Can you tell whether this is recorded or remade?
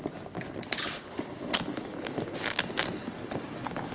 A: recorded